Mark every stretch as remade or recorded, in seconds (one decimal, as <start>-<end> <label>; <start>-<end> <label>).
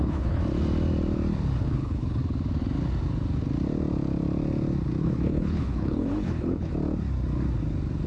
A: 0.0-0.4 remade; 0.4-1.6 recorded; 1.6-2.2 remade; 2.2-5.0 recorded; 5.0-6.7 remade; 6.7-8.1 recorded